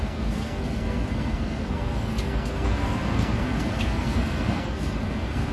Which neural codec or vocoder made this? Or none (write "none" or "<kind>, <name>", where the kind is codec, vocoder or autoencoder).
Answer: codec, SNAC